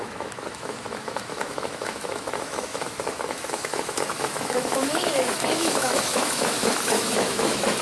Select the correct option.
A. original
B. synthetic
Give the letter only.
B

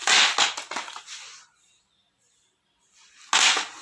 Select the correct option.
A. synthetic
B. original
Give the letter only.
B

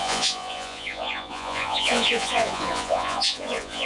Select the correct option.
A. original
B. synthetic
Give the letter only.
B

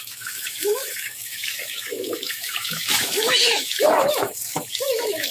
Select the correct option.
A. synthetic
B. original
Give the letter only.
A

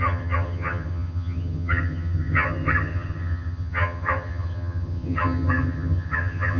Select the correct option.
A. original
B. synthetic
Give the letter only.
B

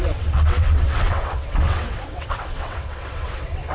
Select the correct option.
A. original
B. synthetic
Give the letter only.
B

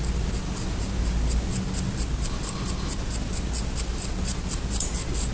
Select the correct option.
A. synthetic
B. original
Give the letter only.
B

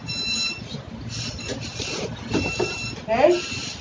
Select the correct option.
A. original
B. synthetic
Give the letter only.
A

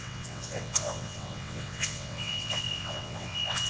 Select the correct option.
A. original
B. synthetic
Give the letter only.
B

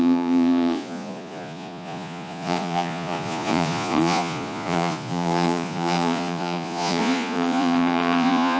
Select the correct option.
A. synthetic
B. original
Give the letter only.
A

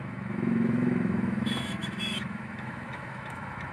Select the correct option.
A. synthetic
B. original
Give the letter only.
A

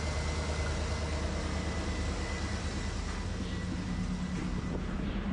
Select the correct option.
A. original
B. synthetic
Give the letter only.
A